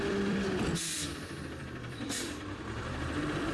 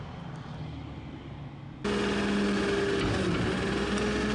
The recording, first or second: second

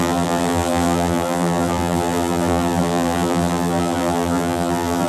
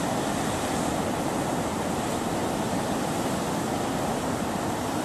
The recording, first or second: second